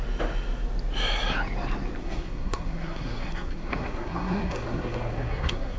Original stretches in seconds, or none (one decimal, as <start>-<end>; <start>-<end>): 0.0-2.0